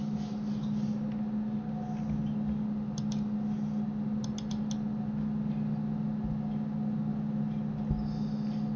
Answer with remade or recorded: recorded